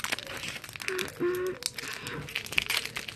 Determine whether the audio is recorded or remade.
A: recorded